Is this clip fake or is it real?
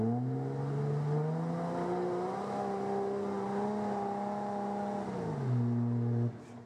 real